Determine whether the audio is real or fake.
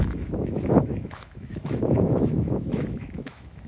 fake